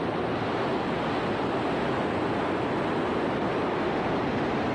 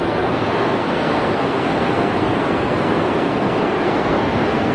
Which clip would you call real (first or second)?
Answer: first